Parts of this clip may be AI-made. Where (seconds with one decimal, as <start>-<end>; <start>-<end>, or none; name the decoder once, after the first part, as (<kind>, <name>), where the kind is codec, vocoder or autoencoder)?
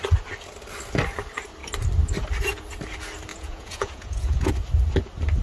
3.3-4.5 (vocoder, Vocos)